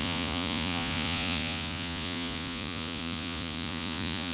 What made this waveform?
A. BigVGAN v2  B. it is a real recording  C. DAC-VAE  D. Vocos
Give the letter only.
D